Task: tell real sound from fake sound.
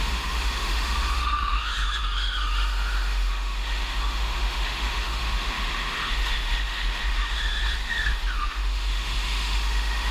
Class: fake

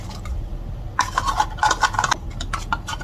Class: real